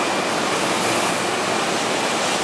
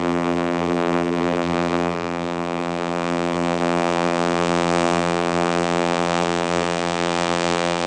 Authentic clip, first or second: first